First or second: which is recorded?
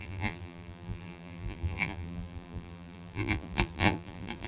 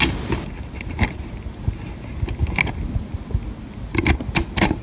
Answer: second